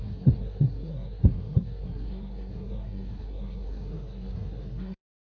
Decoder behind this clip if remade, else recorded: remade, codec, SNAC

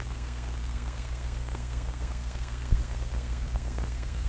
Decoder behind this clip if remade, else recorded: remade, codec, SNAC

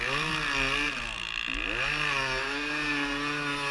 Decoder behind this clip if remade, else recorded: recorded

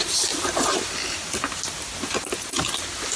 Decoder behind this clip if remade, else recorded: recorded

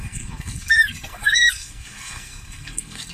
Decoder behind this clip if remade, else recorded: remade, codec, SNAC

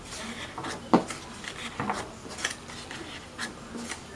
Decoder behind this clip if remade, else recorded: recorded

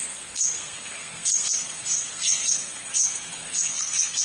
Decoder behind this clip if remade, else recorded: remade, codec, SNAC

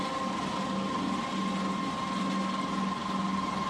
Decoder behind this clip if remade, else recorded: recorded